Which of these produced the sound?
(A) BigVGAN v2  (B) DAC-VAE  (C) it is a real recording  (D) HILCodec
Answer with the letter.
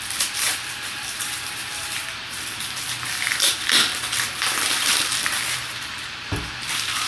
A